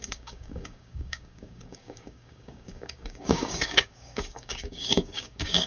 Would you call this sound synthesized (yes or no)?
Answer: yes